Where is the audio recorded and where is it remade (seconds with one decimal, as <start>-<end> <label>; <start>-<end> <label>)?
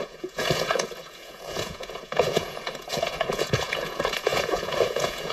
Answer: 0.0-5.3 remade